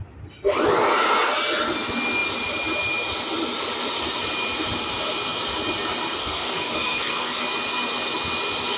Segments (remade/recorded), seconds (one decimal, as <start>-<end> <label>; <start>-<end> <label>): 0.0-6.2 recorded; 6.2-7.4 remade; 7.4-8.8 recorded